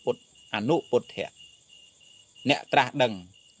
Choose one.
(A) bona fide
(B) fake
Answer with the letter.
B